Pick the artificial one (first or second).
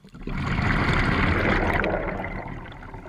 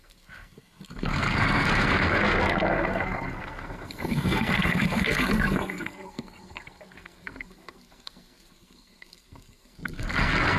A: second